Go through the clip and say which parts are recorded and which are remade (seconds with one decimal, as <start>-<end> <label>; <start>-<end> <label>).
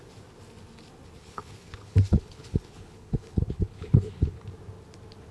0.0-1.2 recorded; 1.2-4.4 remade; 4.4-5.3 recorded